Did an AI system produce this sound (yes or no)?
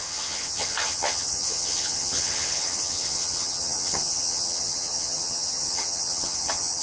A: yes